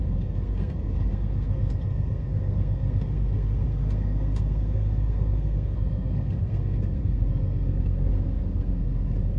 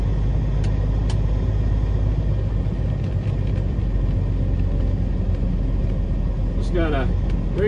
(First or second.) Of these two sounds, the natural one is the second